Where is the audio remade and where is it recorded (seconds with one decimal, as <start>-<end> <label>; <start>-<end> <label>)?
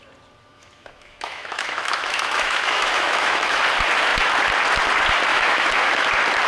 0.0-0.5 recorded; 0.5-3.6 remade; 3.6-5.3 recorded; 5.3-6.1 remade; 6.1-6.5 recorded